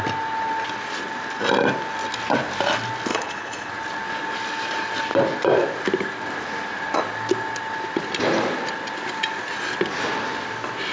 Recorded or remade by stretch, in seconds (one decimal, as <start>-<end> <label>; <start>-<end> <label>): 0.0-3.1 recorded; 3.1-3.7 remade; 3.7-10.9 recorded